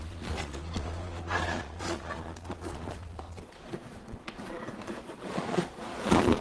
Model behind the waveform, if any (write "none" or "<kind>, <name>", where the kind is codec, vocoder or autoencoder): vocoder, Vocos